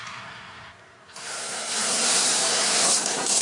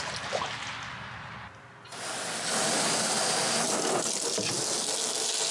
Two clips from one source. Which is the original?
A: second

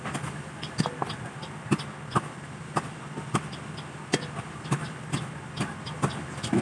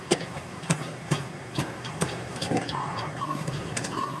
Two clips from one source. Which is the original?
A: first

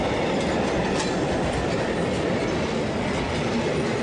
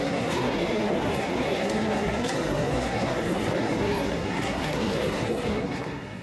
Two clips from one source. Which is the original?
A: first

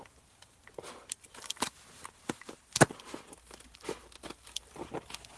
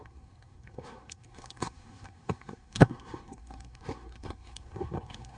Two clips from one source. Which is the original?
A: first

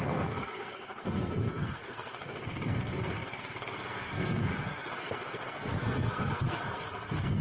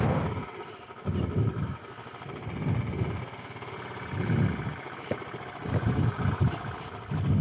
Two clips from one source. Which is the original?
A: second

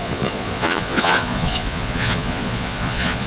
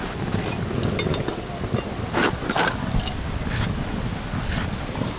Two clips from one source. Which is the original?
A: second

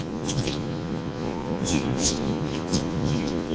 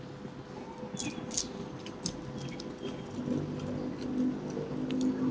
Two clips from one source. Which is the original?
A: second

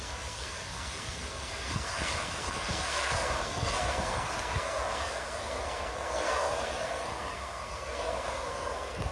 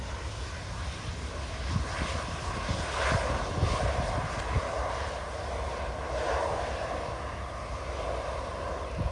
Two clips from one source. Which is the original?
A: second